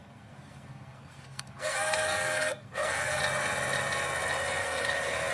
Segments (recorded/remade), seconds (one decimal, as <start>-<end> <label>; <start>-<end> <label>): 0.0-3.2 remade; 3.2-4.6 recorded; 4.6-5.3 remade